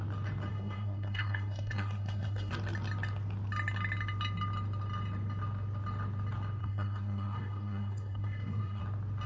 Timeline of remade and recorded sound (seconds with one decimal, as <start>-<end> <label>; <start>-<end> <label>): 0.0-0.5 recorded; 0.5-2.5 remade; 2.5-6.6 recorded; 6.6-8.8 remade; 8.8-9.3 recorded